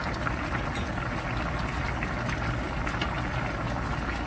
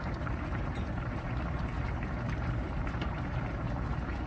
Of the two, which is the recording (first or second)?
first